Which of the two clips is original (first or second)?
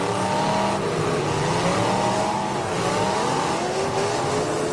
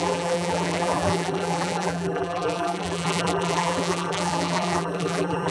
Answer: first